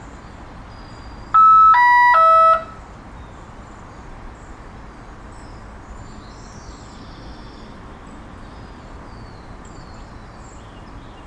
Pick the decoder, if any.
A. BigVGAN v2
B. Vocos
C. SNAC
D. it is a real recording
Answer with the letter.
D